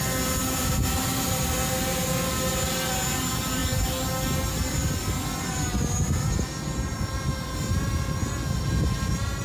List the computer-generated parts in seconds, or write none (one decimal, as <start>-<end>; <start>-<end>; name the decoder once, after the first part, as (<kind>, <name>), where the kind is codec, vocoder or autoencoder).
0.4-2.0 (vocoder, BigVGAN v2)